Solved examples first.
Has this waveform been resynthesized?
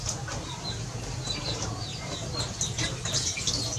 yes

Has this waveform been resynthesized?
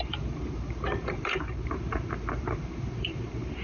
yes